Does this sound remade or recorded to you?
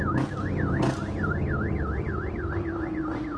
recorded